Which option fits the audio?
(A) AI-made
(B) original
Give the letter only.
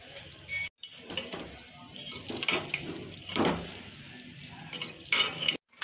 B